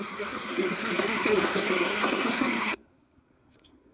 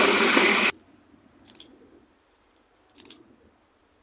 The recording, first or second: second